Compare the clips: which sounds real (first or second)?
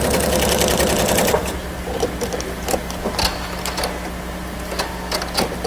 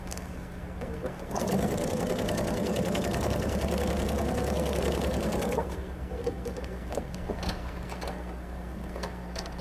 first